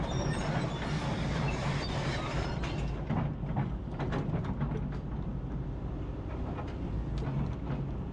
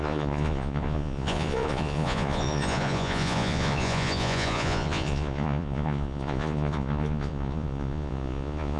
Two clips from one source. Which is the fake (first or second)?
second